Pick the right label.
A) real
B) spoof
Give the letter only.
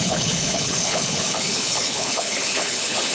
B